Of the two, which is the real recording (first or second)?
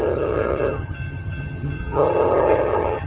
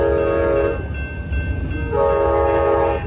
second